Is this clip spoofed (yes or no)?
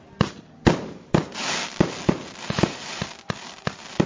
no